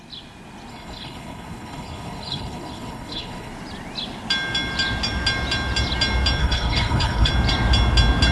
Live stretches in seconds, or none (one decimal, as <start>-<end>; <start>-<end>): 0.0-0.7; 3.5-6.4; 7.3-8.3